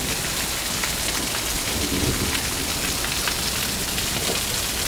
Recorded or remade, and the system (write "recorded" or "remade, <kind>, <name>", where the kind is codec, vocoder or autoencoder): recorded